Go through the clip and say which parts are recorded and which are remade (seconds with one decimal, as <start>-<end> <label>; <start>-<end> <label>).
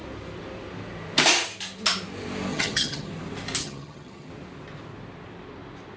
0.0-2.5 recorded; 2.5-3.1 remade; 3.1-3.6 recorded; 3.6-4.3 remade; 4.3-6.0 recorded